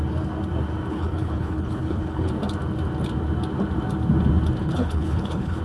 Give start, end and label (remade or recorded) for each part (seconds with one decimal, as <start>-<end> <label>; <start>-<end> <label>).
0.0-0.9 recorded; 0.9-2.3 remade; 2.3-4.6 recorded; 4.6-5.6 remade